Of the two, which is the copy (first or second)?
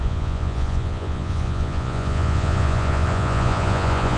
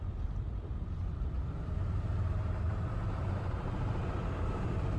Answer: first